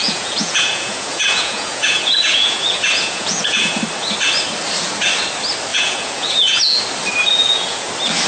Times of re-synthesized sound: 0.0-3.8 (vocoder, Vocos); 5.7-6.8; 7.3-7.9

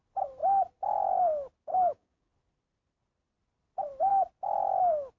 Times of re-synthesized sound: 1.7-2.3 (codec, DAC)

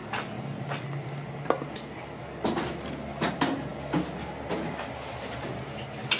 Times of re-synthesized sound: none